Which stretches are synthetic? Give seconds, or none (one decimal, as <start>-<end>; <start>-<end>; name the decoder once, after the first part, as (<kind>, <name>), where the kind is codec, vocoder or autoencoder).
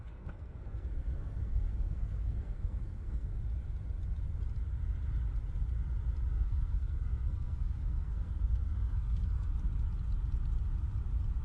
0.0-3.3 (codec, SNAC); 6.3-9.5